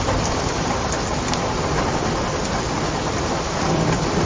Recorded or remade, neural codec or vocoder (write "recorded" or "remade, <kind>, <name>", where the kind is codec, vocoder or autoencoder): recorded